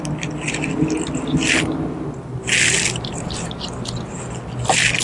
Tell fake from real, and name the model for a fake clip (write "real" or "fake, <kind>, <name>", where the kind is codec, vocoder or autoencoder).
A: real